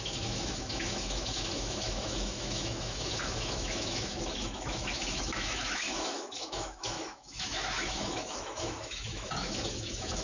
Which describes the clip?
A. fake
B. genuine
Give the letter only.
A